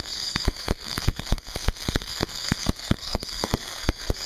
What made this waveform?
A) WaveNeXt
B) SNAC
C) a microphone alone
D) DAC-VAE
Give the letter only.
B